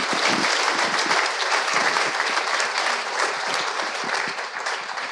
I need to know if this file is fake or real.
fake